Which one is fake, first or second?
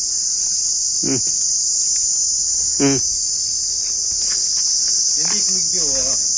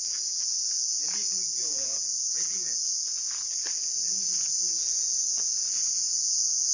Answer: second